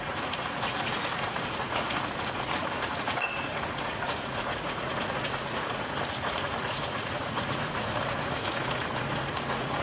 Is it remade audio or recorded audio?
remade